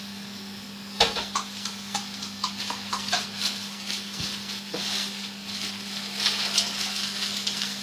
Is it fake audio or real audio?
fake